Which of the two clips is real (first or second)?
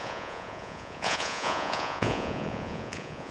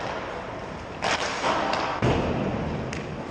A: second